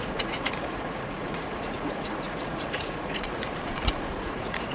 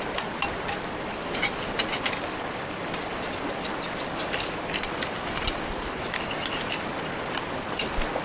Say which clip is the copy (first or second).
first